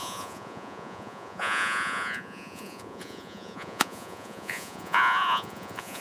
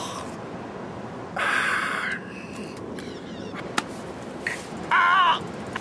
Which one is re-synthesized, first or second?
first